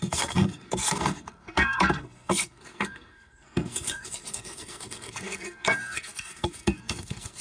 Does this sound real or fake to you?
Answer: fake